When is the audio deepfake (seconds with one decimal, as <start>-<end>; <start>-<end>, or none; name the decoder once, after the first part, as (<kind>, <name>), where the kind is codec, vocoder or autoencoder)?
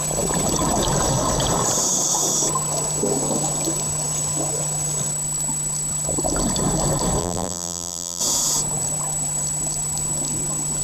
7.2-8.2 (vocoder, BigVGAN v2)